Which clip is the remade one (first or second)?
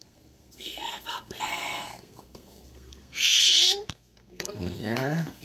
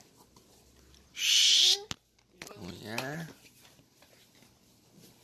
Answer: first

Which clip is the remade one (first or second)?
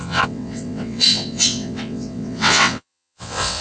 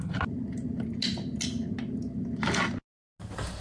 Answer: first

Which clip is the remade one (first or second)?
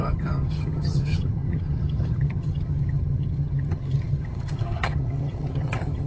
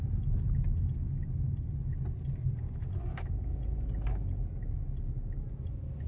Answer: first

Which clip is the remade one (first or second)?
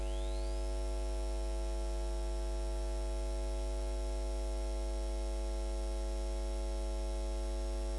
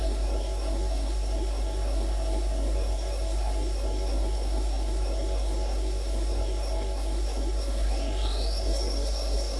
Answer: second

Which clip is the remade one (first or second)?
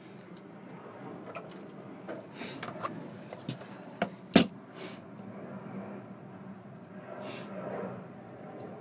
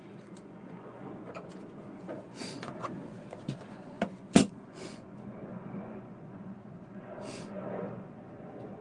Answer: second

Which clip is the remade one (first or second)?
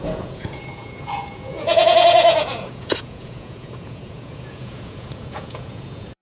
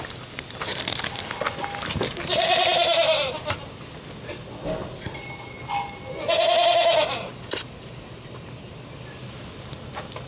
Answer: first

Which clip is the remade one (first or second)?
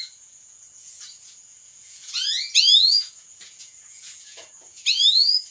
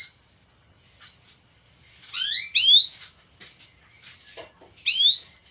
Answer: first